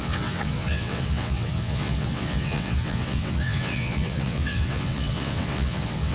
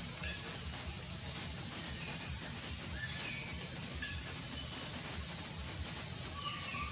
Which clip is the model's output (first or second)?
first